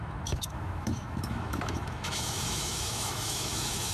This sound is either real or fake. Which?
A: fake